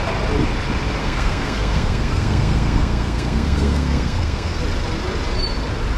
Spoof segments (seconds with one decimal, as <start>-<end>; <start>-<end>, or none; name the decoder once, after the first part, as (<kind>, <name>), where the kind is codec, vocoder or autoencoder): 1.0-4.6 (codec, SNAC)